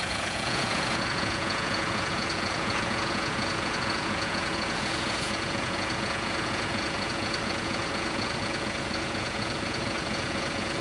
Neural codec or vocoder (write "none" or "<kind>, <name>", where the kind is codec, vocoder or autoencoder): vocoder, Vocos